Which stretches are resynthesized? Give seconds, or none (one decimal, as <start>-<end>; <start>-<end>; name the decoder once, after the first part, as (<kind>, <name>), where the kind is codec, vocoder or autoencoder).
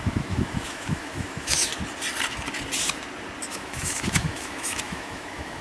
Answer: 0.0-1.7 (autoencoder, DAC-VAE); 3.5-5.6